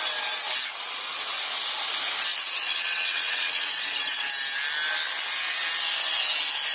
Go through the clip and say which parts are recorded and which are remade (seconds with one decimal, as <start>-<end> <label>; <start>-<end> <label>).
0.0-2.3 recorded; 2.3-4.3 remade; 4.3-6.7 recorded